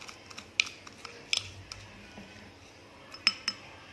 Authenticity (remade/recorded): recorded